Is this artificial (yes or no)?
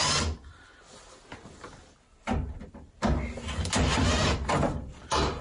no